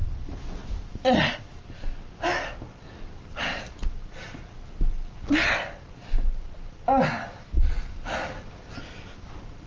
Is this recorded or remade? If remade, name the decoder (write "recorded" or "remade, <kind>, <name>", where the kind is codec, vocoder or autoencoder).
recorded